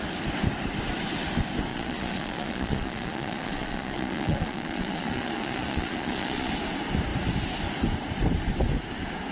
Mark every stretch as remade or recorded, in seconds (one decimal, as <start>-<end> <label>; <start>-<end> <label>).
0.0-1.7 recorded; 1.7-6.5 remade; 6.5-9.3 recorded